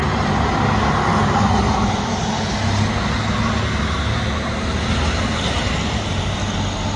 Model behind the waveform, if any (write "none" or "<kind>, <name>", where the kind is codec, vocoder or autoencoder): none